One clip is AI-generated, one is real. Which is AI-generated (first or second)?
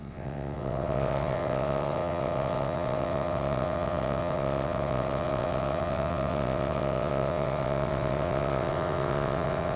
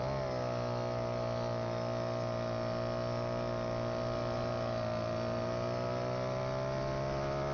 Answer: first